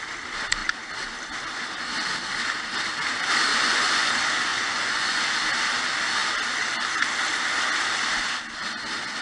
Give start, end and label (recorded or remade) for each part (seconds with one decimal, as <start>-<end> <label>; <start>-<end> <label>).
0.0-3.5 recorded; 3.5-4.1 remade; 4.1-4.5 recorded; 4.5-5.2 remade; 5.2-9.2 recorded